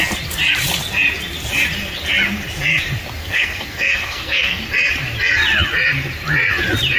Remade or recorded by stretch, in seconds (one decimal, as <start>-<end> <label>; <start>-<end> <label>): 0.0-3.2 recorded; 3.2-4.6 remade; 4.6-7.0 recorded

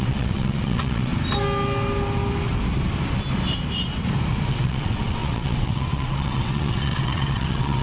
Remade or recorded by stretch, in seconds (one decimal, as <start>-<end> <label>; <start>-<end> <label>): 0.0-1.1 remade; 1.1-4.5 recorded; 4.5-7.8 remade

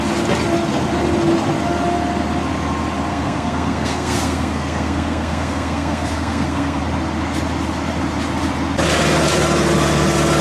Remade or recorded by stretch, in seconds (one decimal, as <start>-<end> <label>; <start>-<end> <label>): 0.0-3.1 recorded; 3.1-6.8 remade; 6.8-10.4 recorded

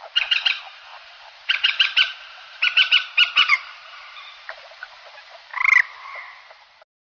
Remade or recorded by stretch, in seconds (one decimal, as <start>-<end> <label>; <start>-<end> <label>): 0.0-5.5 remade; 5.5-7.1 recorded

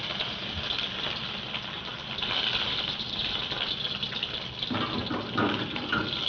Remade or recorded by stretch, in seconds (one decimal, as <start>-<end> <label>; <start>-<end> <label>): 0.0-6.3 recorded